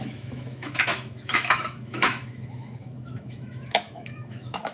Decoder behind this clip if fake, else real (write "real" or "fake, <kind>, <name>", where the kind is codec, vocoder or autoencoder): fake, autoencoder, DAC-VAE